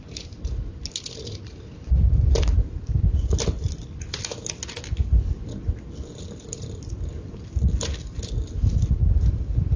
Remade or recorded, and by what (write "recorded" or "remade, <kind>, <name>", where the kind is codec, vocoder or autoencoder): recorded